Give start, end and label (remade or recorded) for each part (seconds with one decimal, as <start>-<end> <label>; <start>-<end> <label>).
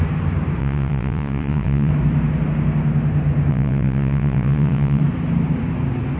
0.0-0.6 recorded; 0.6-1.9 remade; 1.9-3.5 recorded; 3.5-5.0 remade; 5.0-6.2 recorded